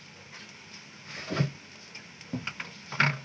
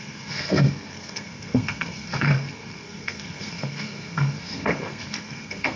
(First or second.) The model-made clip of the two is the second